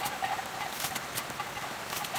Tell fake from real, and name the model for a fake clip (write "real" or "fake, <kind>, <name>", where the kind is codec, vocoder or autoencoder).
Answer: real